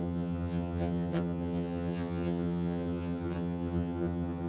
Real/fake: fake